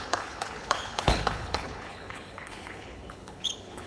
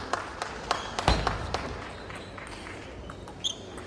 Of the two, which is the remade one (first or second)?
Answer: first